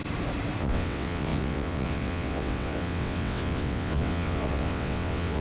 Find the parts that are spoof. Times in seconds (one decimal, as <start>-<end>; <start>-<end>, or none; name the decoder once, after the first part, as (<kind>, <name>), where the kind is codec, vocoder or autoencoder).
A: 0.6-5.4 (vocoder, WaveNeXt)